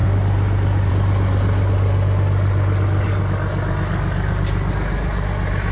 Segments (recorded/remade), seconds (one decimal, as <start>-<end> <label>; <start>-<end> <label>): 0.0-5.7 recorded